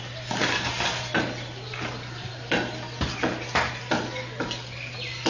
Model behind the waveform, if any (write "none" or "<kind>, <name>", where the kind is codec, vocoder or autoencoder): none